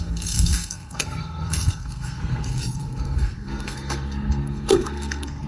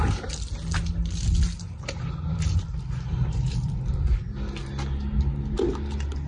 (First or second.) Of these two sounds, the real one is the second